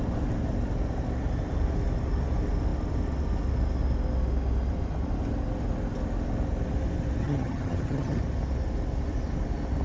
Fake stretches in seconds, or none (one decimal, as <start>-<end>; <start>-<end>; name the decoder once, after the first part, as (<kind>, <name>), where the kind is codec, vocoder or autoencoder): 7.2-8.2 (vocoder, HiFi-GAN)